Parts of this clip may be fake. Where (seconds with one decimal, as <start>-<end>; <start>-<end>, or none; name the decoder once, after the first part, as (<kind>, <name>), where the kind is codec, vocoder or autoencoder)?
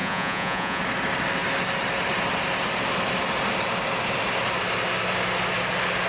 0.0-0.8 (vocoder, Vocos)